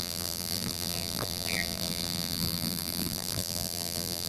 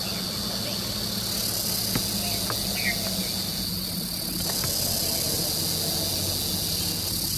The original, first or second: second